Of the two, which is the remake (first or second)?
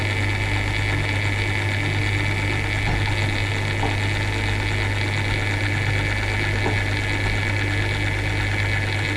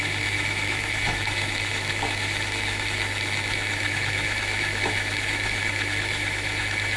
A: second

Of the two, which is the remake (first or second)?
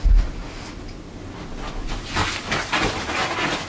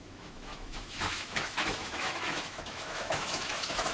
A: second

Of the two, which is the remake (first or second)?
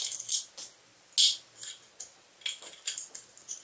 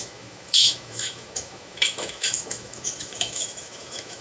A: second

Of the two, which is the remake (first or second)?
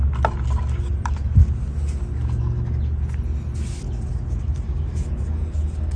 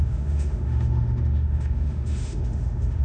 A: second